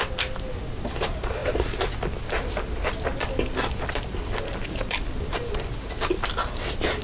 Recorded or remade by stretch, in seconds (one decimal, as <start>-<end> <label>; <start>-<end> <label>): 0.0-7.0 recorded